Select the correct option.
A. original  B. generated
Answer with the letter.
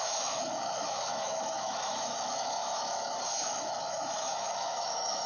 B